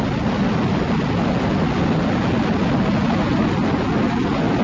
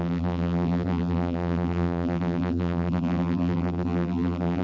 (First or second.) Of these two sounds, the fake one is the second